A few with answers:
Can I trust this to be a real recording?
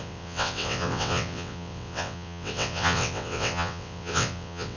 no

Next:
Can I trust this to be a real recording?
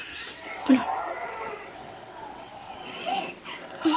no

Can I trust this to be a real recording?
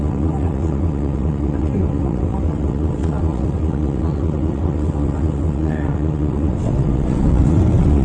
no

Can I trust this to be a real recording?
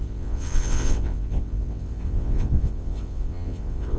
no